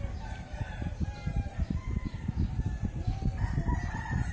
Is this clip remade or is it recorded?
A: remade